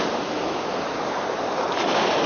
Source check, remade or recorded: recorded